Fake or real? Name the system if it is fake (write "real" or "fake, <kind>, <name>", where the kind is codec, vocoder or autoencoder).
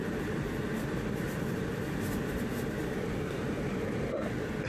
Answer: fake, vocoder, BigVGAN v2